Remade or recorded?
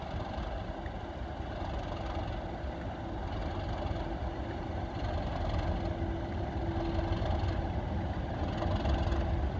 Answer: recorded